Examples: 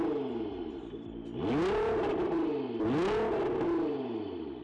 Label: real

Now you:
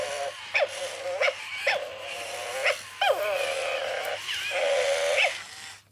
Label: real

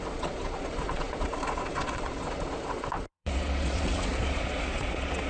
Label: fake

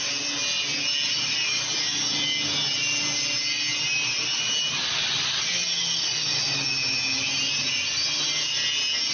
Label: real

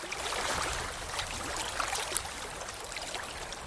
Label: real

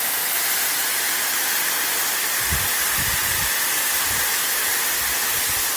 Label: real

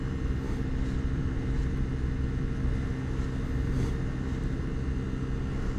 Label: real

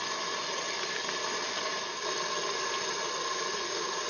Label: real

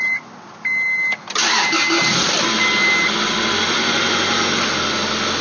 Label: real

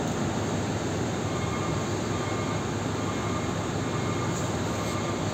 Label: real